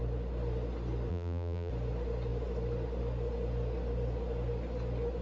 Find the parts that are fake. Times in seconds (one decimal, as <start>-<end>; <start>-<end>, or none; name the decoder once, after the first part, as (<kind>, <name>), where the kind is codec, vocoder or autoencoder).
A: 1.1-1.7 (vocoder, BigVGAN v2)